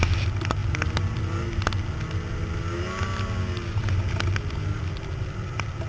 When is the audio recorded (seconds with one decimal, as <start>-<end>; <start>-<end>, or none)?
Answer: 0.0-5.9